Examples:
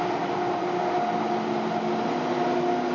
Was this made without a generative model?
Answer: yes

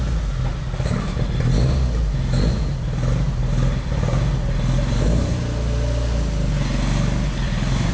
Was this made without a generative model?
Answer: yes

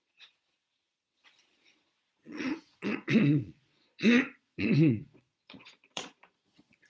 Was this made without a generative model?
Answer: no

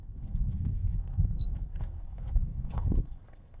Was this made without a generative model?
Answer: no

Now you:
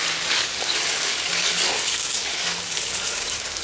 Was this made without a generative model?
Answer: no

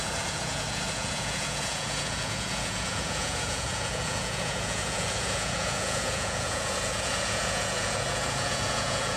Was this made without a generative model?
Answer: no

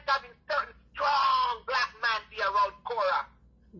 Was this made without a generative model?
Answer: yes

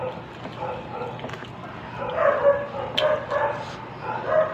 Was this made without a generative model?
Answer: yes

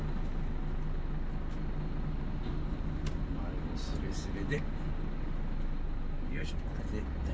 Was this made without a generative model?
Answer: yes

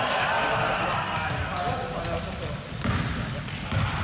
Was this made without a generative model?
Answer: yes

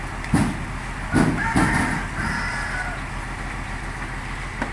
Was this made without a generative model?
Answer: yes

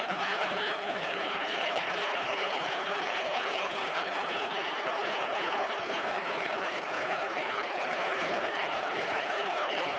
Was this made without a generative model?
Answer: no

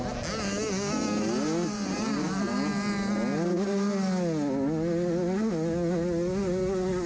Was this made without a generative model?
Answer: yes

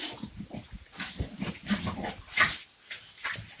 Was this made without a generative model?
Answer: yes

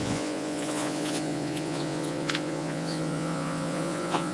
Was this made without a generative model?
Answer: no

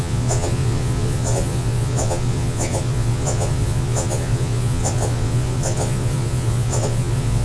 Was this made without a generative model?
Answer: no